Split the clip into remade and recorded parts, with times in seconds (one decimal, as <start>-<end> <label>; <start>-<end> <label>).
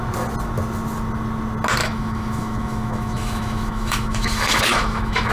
0.0-1.8 recorded; 1.8-5.3 remade